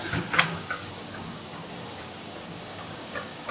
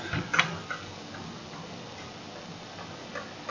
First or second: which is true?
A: second